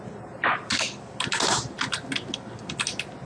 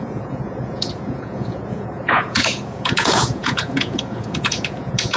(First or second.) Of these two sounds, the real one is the first